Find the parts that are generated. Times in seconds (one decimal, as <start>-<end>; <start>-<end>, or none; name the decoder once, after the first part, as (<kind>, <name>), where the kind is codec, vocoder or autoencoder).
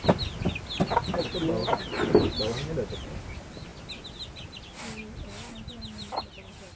none